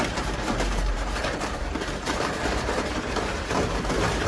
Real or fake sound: fake